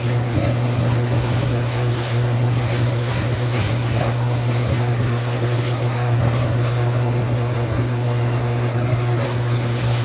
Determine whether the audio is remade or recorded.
remade